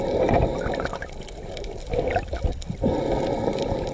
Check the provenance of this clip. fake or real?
real